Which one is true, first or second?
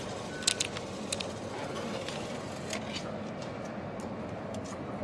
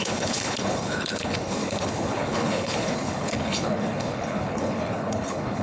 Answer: first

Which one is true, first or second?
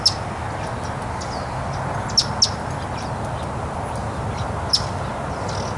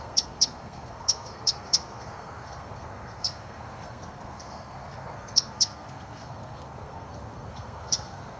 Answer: first